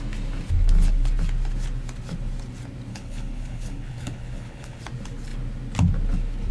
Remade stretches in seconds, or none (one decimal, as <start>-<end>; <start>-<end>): 2.9-4.8